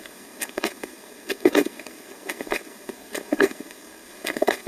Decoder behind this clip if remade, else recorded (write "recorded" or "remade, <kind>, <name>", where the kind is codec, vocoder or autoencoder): remade, codec, SNAC